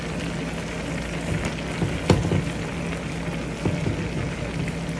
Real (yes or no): yes